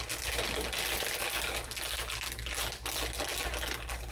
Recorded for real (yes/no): yes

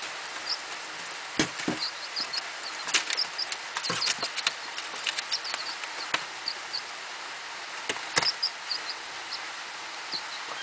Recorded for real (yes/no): yes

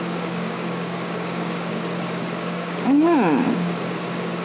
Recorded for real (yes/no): no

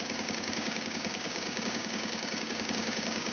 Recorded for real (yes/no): no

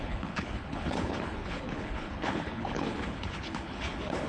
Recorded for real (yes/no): no